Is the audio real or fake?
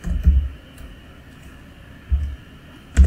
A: real